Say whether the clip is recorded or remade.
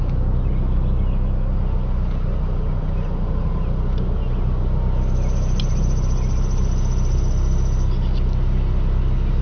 recorded